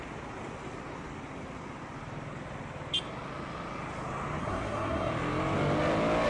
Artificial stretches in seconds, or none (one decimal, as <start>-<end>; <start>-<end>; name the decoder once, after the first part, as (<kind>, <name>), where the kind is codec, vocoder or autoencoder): 4.4-5.1 (codec, SNAC)